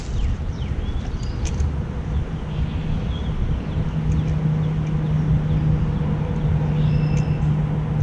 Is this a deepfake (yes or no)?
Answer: no